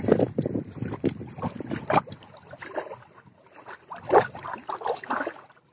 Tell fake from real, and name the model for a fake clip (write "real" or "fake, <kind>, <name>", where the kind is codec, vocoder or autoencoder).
real